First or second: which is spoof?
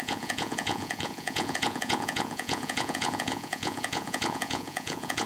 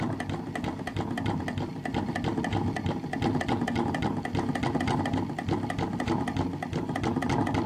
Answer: first